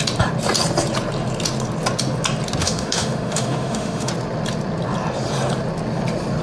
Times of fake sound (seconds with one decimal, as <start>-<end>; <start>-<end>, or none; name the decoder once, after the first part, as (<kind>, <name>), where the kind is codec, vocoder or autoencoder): 2.6-4.1 (autoencoder, DAC-VAE)